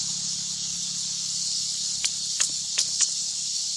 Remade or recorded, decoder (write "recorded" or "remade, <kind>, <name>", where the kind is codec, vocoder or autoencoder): remade, codec, HILCodec